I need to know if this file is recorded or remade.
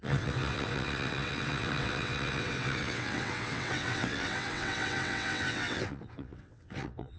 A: remade